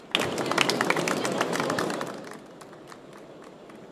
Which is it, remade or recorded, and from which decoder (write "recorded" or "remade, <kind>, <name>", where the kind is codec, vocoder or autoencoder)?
recorded